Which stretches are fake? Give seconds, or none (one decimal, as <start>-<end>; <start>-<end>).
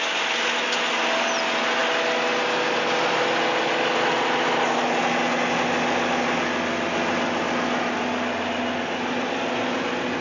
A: none